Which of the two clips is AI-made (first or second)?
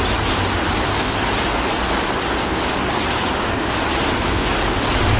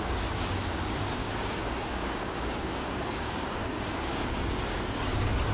second